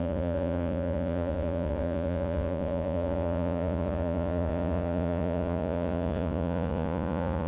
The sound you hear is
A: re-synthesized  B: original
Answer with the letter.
A